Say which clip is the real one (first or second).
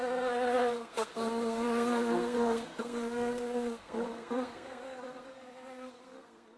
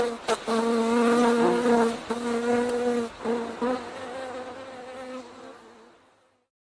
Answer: second